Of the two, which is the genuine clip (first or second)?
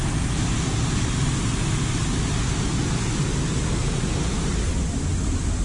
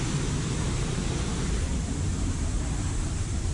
first